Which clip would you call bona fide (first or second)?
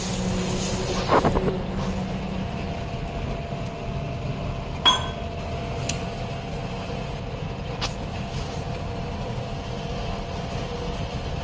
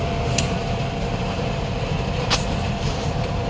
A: first